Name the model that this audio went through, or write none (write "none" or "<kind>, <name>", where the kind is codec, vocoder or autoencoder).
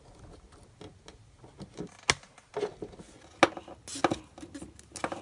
none